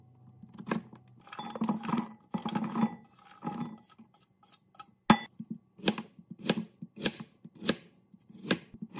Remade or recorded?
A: recorded